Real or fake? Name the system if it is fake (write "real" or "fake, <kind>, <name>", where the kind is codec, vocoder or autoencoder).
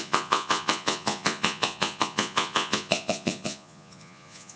fake, vocoder, Vocos